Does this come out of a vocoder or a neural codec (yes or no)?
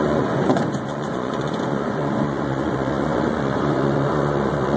yes